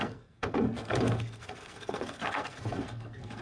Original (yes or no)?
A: no